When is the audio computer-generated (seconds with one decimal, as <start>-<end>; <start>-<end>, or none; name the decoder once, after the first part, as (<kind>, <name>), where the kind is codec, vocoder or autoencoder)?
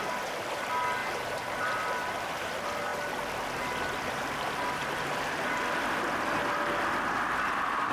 1.0-2.5 (vocoder, BigVGAN v2)